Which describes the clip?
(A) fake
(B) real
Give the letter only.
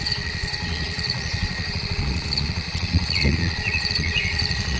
A